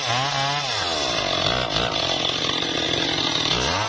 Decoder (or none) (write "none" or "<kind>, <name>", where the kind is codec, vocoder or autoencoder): none